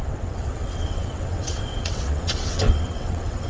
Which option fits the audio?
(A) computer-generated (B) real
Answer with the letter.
A